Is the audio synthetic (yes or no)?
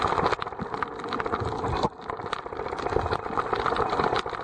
no